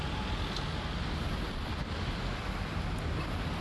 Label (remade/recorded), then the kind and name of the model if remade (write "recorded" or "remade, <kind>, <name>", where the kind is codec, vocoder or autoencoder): recorded